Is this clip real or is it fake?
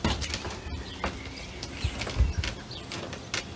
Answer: real